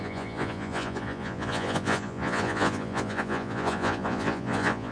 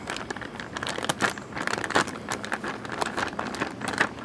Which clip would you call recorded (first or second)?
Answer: second